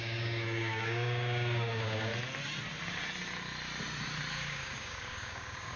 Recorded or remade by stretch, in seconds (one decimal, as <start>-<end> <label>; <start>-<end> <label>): 0.0-2.1 remade; 2.1-4.3 recorded; 4.3-5.8 remade